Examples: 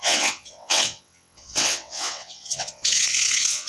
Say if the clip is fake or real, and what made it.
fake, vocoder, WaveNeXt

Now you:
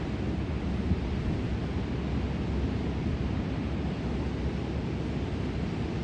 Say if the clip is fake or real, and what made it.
real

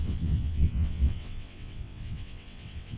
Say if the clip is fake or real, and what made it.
fake, vocoder, WaveNeXt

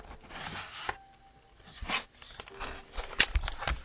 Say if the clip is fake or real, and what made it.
real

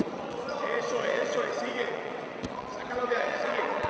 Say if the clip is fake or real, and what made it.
fake, vocoder, WaveNeXt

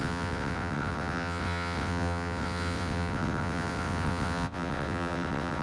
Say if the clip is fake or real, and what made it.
fake, vocoder, WaveNeXt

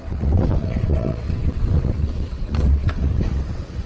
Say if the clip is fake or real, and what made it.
fake, vocoder, WaveNeXt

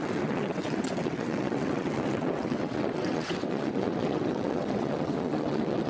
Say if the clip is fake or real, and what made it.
fake, vocoder, WaveNeXt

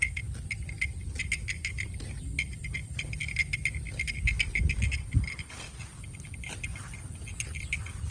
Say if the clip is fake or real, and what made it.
real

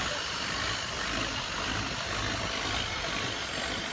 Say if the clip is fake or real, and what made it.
real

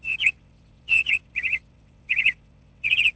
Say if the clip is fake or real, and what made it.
fake, vocoder, WaveNeXt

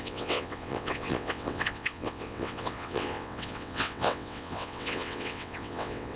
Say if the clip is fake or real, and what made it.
fake, vocoder, WaveNeXt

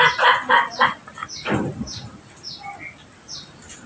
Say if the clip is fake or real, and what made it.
real